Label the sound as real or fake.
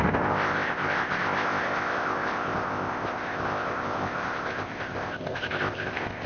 fake